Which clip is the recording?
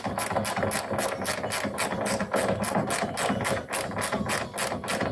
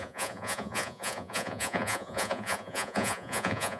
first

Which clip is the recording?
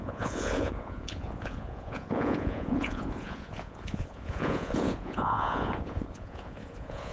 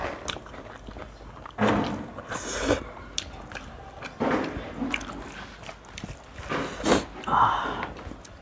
second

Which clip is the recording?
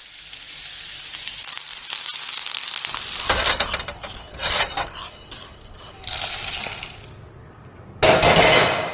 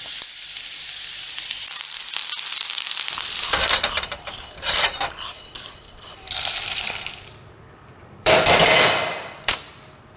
first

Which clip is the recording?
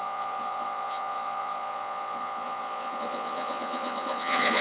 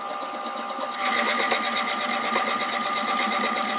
second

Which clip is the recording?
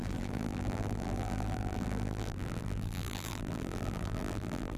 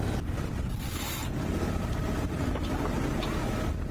second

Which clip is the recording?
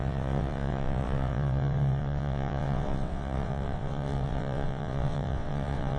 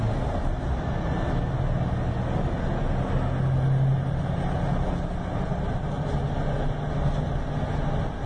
second